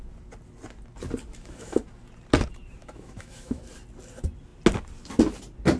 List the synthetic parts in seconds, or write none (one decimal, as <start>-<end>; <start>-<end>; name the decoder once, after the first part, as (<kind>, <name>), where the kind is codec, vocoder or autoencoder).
1.3-1.8 (autoencoder, DAC-VAE); 2.8-3.6